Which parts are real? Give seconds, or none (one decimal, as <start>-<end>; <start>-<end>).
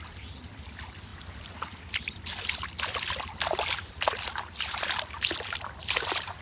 0.0-6.4